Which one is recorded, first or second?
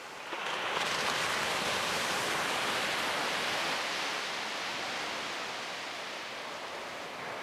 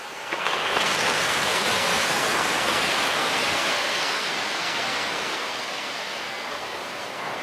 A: first